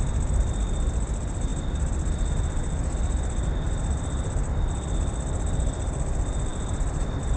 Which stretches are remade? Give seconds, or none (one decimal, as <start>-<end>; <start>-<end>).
none